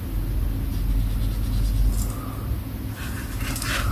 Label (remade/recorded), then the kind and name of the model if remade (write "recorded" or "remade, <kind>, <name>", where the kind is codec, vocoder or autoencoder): recorded